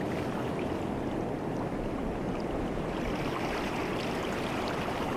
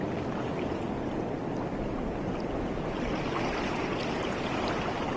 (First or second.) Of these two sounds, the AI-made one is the first